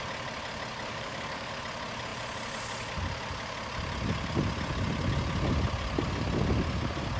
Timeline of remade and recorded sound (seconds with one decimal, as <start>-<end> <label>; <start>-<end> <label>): 0.0-0.9 recorded; 0.9-1.5 remade; 1.5-7.2 recorded